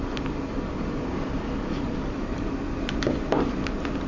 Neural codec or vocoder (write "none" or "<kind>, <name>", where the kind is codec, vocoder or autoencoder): vocoder, BigVGAN v2